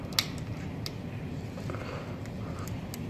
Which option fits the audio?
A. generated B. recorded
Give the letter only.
B